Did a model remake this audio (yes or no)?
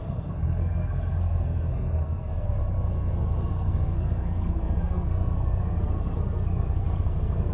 yes